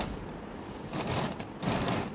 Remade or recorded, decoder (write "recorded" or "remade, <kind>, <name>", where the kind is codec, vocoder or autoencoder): recorded